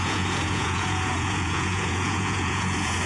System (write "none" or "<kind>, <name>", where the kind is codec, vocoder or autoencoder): vocoder, Vocos